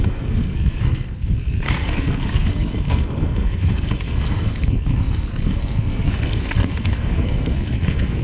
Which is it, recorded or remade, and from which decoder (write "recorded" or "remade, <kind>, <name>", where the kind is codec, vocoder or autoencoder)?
remade, codec, SNAC